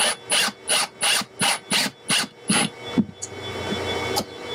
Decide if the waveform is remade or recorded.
recorded